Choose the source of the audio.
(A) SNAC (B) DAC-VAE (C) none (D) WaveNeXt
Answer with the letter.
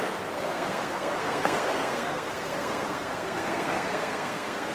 A